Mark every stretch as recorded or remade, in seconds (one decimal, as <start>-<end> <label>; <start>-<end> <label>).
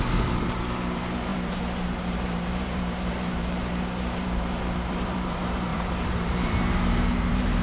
0.0-7.6 remade